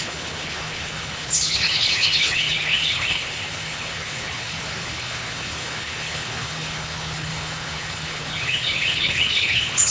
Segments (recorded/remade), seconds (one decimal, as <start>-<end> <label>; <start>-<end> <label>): 0.0-9.9 remade